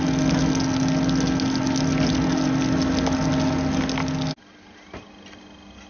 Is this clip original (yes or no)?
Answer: yes